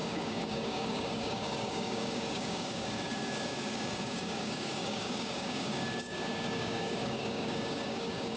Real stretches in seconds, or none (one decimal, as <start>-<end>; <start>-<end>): none